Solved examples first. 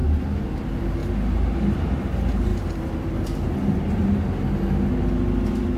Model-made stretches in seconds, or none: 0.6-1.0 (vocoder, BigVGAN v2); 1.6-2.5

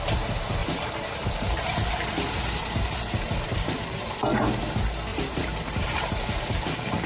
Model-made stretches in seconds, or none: 0.6-4.6 (vocoder, BigVGAN v2); 5.1-6.1

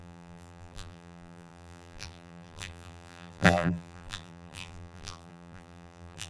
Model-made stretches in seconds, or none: 0.0-6.3 (vocoder, BigVGAN v2)